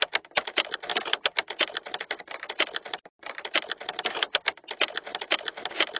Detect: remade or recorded recorded